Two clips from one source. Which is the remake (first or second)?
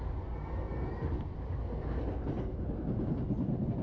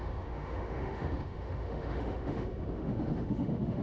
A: second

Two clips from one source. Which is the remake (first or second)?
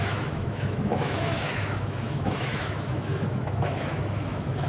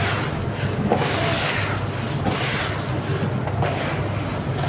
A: first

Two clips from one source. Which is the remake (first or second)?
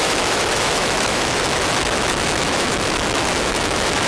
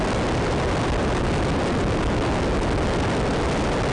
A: first